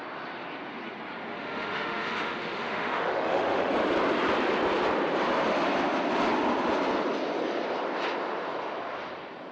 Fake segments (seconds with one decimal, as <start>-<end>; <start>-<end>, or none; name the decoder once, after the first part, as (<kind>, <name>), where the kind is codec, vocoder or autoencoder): 1.3-3.7 (autoencoder, DAC-VAE)